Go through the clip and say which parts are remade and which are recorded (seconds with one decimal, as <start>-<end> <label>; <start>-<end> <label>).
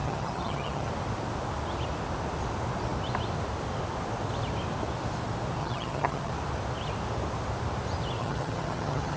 0.0-0.9 remade; 0.9-5.6 recorded; 5.6-6.3 remade; 6.3-8.2 recorded; 8.2-9.2 remade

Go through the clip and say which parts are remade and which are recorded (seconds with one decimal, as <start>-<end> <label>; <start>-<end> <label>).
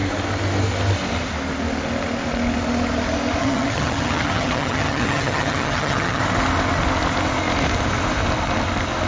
0.0-3.4 recorded; 3.4-6.2 remade; 6.2-9.1 recorded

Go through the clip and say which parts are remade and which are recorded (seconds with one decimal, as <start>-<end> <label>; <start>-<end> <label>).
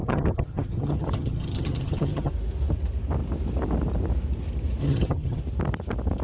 0.0-2.3 remade; 2.3-4.8 recorded; 4.8-5.4 remade; 5.4-6.2 recorded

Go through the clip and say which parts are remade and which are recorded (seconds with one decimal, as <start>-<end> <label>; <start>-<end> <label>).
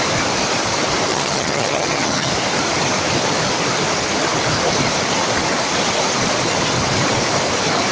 0.0-1.1 recorded; 1.1-2.3 remade; 2.3-7.9 recorded